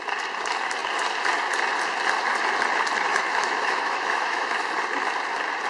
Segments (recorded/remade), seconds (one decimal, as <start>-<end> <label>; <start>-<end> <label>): 0.0-3.1 recorded; 3.1-4.7 remade; 4.7-5.7 recorded